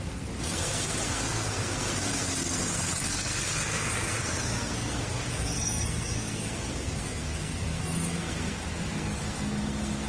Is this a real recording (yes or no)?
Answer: no